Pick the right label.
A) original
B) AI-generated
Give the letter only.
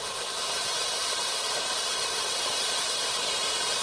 B